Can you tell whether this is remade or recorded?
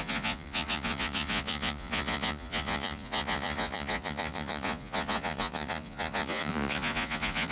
remade